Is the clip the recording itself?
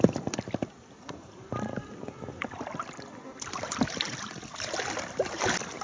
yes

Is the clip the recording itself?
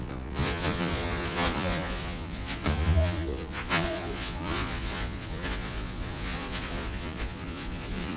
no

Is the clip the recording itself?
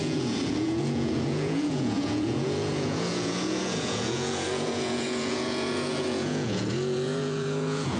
no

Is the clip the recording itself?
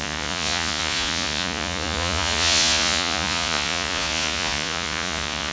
no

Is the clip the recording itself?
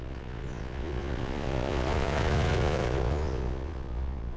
no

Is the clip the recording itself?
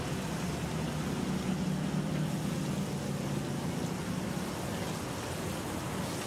yes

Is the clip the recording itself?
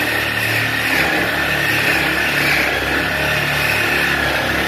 yes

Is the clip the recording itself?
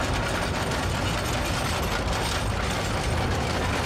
yes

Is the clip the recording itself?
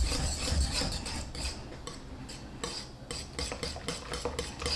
yes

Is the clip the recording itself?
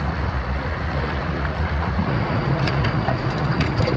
no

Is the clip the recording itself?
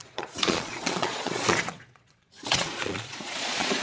no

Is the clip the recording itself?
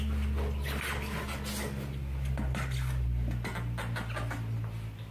yes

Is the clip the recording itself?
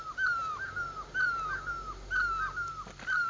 yes